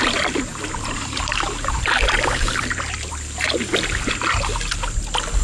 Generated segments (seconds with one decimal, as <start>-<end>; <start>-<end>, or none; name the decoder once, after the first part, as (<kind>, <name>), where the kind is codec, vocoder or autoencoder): 0.5-3.1 (vocoder, BigVGAN v2)